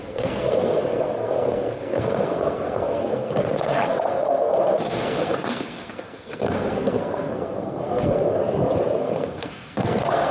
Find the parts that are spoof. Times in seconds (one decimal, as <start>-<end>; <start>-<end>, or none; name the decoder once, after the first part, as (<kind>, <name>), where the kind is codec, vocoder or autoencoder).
0.0-8.4 (codec, SNAC); 9.0-10.3